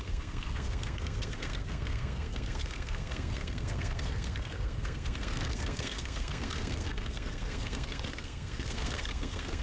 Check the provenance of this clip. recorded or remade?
remade